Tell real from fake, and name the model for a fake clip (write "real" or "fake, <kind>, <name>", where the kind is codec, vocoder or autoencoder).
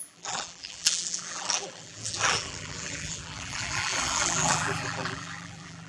fake, vocoder, BigVGAN v2